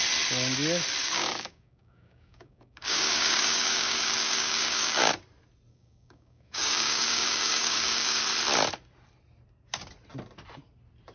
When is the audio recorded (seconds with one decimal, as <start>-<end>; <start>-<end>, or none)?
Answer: 0.0-1.0; 5.1-5.7; 8.2-11.1